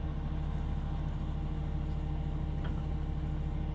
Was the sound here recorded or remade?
recorded